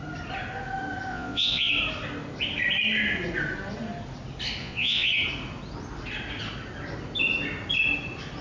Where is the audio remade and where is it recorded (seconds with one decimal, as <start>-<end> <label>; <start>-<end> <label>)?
0.0-1.1 recorded; 1.1-1.7 remade; 1.7-4.6 recorded; 4.6-5.1 remade; 5.1-8.4 recorded